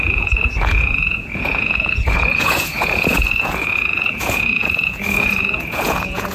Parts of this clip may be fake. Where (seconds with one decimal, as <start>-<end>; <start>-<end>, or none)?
0.0-6.3